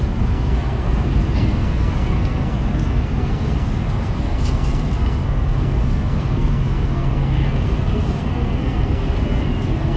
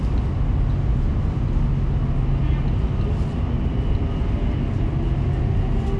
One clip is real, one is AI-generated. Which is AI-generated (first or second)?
first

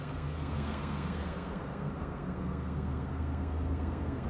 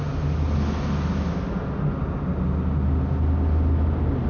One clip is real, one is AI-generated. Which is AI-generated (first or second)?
first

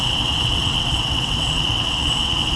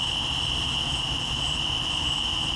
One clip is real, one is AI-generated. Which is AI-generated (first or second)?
first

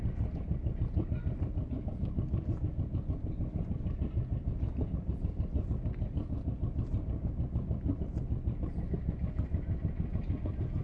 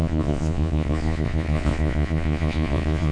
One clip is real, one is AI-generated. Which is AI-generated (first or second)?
second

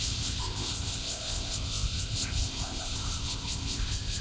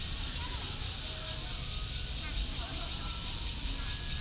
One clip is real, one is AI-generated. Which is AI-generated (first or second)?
first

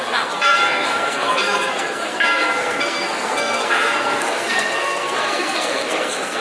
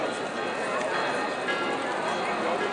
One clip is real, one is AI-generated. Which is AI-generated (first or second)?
first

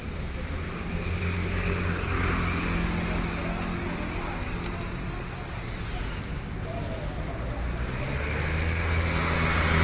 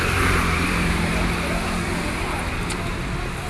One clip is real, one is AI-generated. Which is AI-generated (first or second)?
second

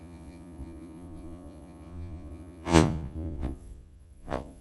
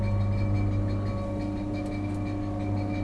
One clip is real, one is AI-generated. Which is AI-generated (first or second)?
first